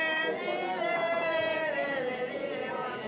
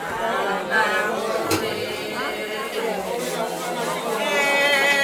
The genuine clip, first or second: second